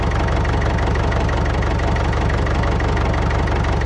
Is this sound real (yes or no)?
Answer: yes